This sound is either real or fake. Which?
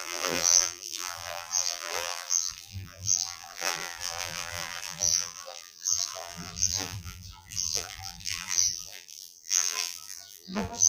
fake